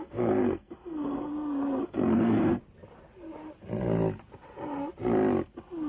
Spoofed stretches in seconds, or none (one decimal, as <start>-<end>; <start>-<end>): 0.0-1.3; 1.8-2.6